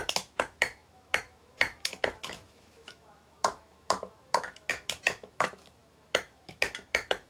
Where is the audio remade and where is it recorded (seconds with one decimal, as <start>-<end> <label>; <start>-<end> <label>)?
0.0-7.3 remade